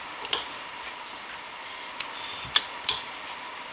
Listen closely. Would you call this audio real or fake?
fake